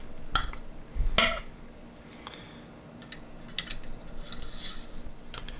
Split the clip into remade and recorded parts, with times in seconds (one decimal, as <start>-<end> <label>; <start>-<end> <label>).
0.0-5.6 recorded

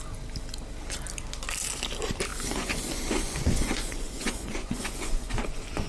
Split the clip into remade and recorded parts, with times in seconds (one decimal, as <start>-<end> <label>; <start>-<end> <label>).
0.0-2.3 recorded; 2.3-5.9 remade

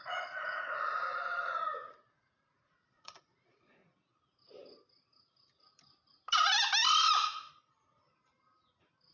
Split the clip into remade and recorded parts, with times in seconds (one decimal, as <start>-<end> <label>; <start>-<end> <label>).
0.0-3.8 remade; 3.8-9.1 recorded

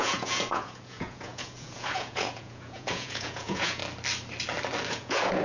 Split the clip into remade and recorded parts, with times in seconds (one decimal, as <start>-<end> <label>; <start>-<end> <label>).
0.0-3.8 remade; 3.8-4.9 recorded; 4.9-5.4 remade

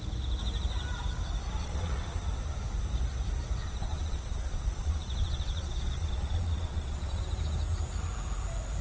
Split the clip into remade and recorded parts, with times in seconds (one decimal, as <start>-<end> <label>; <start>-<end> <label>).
0.0-1.6 recorded; 1.6-2.2 remade; 2.2-3.6 recorded; 3.6-7.2 remade; 7.2-8.8 recorded

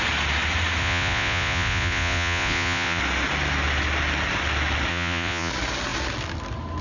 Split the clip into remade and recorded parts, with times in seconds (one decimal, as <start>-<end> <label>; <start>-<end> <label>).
0.0-0.8 recorded; 0.8-3.0 remade; 3.0-4.9 recorded; 4.9-5.5 remade; 5.5-6.8 recorded